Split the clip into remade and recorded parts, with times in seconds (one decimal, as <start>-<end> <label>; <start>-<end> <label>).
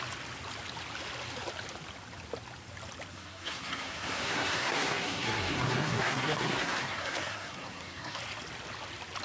0.0-3.1 recorded; 3.1-8.2 remade; 8.2-9.2 recorded